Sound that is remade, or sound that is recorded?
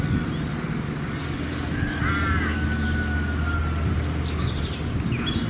recorded